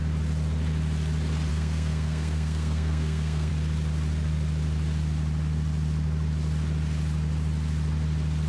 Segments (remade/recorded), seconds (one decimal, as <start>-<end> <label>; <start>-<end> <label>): 0.0-1.5 recorded; 1.5-3.5 remade; 3.5-8.5 recorded